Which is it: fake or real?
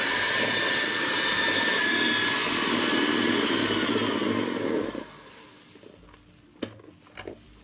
real